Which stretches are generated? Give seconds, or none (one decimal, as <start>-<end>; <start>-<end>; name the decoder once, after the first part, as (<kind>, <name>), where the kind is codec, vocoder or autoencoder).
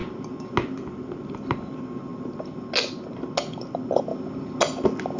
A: none